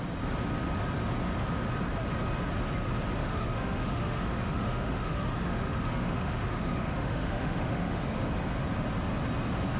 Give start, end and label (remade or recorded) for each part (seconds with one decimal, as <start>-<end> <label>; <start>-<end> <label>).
0.0-3.2 recorded; 3.2-8.3 remade; 8.3-9.8 recorded